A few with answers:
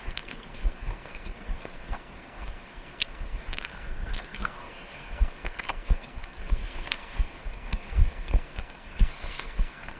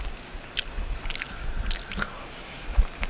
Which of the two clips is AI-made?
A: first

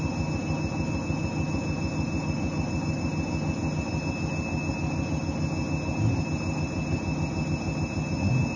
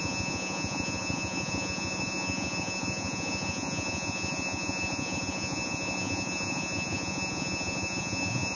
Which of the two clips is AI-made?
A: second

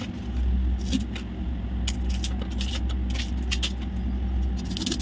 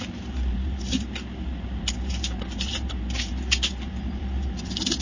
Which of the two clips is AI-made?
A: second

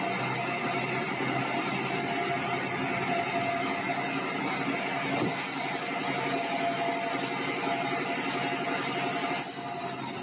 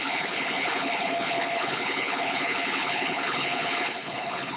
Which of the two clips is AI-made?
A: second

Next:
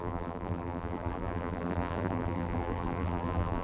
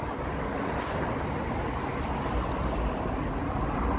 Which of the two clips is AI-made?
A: first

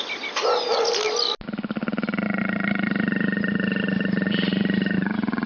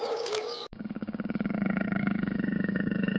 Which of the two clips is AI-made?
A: second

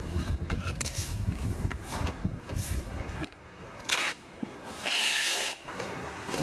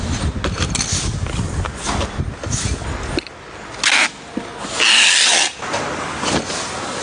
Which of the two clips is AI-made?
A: first